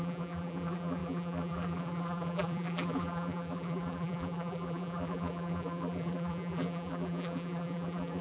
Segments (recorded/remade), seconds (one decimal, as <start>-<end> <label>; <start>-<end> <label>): 0.0-8.2 remade